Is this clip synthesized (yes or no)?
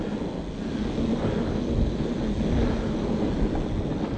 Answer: no